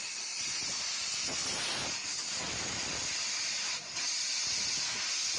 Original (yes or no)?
yes